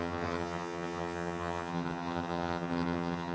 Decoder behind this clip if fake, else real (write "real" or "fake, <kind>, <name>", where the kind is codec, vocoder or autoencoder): fake, vocoder, HiFi-GAN